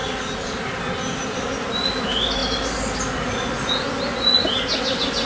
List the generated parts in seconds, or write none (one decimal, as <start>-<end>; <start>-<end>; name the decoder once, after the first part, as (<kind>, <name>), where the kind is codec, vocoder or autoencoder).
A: none